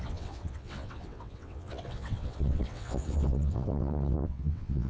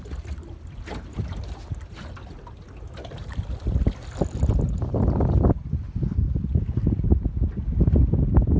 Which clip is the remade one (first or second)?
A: first